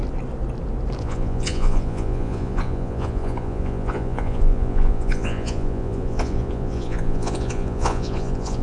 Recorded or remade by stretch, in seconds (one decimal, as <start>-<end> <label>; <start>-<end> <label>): 0.0-1.0 recorded; 1.0-8.6 remade